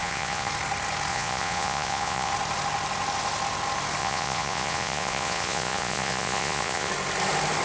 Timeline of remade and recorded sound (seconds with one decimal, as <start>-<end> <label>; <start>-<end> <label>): 0.0-0.5 remade; 0.5-1.1 recorded; 1.1-2.3 remade; 2.3-4.0 recorded; 4.0-6.9 remade; 6.9-7.6 recorded

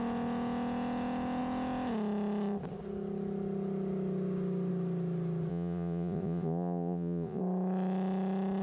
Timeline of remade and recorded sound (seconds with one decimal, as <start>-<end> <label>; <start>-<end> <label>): 0.0-5.5 recorded; 5.5-7.4 remade; 7.4-8.6 recorded

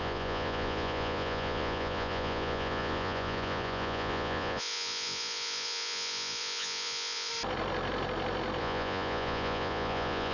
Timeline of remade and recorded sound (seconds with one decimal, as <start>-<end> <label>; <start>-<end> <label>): 0.0-7.3 remade; 7.3-8.6 recorded; 8.6-10.3 remade

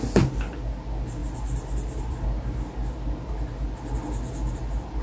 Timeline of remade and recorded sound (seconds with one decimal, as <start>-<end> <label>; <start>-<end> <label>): 0.0-5.0 recorded